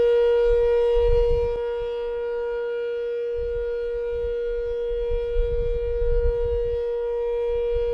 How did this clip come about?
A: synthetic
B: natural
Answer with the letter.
B